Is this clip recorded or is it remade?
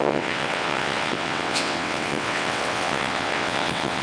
remade